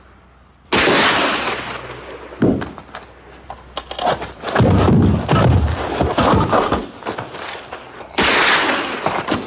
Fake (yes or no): no